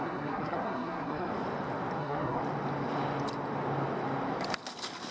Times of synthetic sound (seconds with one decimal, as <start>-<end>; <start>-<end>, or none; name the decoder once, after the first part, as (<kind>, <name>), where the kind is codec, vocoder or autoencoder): 0.0-1.3 (codec, SNAC); 2.0-2.4